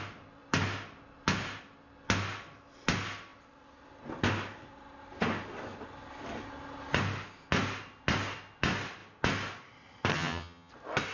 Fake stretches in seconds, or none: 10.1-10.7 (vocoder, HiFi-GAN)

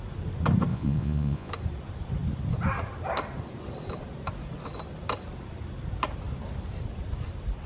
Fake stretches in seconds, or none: 0.7-1.5 (vocoder, Vocos)

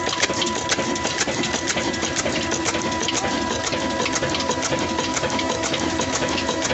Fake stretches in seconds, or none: 5.1-6.7 (autoencoder, DAC-VAE)

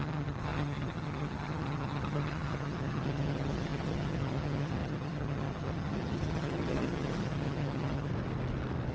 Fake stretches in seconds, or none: 0.0-8.1 (vocoder, HiFi-GAN)

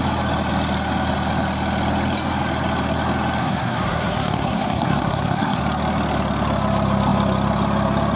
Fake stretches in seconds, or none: 3.4-5.6 (codec, SNAC)

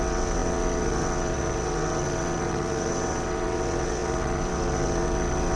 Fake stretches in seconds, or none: 0.0-5.6 (vocoder, WaveNeXt)

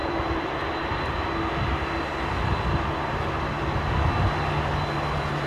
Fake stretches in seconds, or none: 0.0-0.9 (vocoder, BigVGAN v2)